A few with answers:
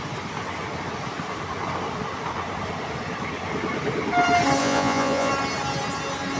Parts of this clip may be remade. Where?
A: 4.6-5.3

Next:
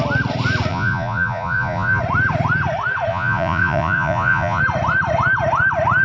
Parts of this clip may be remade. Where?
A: 0.7-2.0; 3.1-4.6

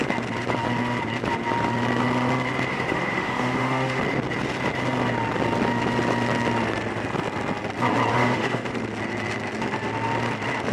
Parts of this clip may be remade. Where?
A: 2.7-4.0; 8.1-8.7